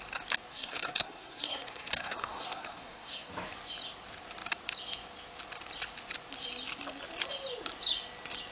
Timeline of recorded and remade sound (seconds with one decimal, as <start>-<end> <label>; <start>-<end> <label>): 0.0-0.5 recorded; 0.5-3.3 remade; 3.3-8.5 recorded

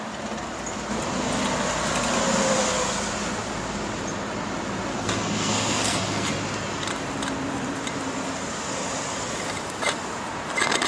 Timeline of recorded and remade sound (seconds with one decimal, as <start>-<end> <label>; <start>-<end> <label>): 0.0-4.9 recorded; 4.9-6.3 remade; 6.3-10.9 recorded

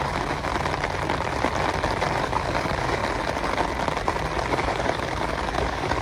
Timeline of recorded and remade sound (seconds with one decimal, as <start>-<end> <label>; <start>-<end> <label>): 0.0-0.5 remade; 0.5-2.2 recorded; 2.2-3.0 remade; 3.0-4.5 recorded; 4.5-6.0 remade

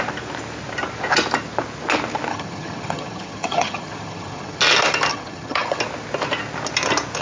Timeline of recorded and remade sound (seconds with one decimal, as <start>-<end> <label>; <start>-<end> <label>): 0.0-2.3 recorded; 2.3-4.6 remade; 4.6-5.1 recorded; 5.1-5.8 remade; 5.8-7.2 recorded

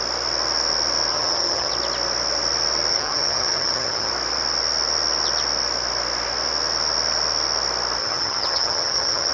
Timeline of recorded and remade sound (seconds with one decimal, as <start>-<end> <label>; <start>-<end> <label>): 0.0-1.1 recorded; 1.1-1.7 remade; 1.7-2.9 recorded; 2.9-4.1 remade; 4.1-8.0 recorded; 8.0-9.3 remade

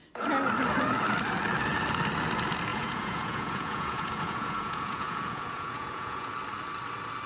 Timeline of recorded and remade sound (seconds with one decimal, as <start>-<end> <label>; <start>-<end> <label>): 0.0-2.7 recorded; 2.7-6.3 remade; 6.3-7.3 recorded

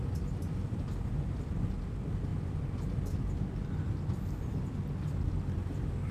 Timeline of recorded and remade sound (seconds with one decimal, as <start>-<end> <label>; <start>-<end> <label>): 0.0-6.1 recorded